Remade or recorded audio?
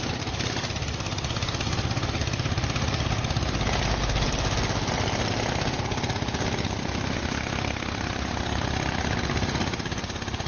recorded